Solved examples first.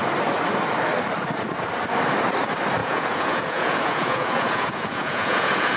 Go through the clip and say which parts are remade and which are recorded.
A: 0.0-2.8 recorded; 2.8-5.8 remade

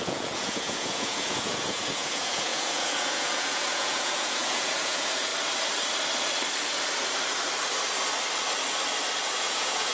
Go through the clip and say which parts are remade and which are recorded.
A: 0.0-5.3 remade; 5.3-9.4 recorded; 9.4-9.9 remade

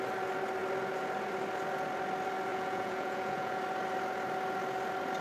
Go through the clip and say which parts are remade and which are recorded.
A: 0.0-2.5 recorded; 2.5-3.6 remade; 3.6-5.2 recorded

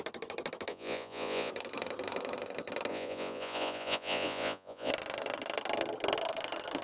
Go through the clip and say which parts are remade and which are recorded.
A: 0.0-0.7 recorded; 0.7-1.5 remade; 1.5-2.9 recorded; 2.9-4.9 remade; 4.9-6.8 recorded